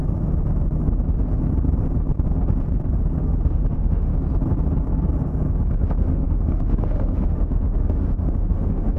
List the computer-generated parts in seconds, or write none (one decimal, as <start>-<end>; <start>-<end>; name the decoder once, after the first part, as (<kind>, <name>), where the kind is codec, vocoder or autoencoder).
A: 3.2-4.1 (autoencoder, DAC-VAE); 6.0-9.0

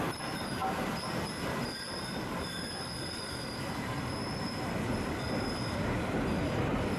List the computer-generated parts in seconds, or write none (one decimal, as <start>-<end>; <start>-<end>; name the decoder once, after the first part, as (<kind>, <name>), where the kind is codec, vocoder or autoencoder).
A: none

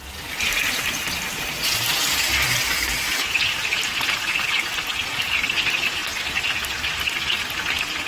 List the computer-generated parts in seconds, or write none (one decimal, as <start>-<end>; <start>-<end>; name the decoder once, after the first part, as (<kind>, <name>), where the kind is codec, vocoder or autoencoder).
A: none